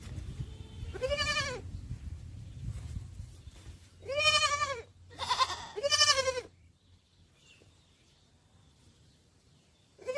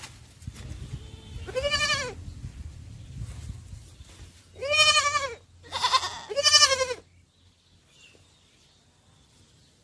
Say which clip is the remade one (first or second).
first